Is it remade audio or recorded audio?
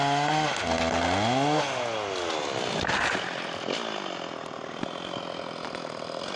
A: recorded